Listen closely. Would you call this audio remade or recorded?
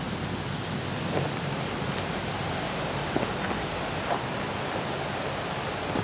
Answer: recorded